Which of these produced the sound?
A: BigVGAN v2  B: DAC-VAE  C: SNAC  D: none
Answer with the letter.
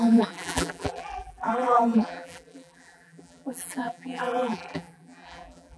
A